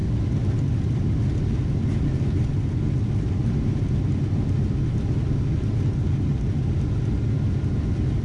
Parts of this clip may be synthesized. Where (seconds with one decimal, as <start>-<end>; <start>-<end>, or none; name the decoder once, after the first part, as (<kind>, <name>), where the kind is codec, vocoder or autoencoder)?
none